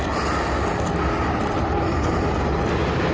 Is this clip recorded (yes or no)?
yes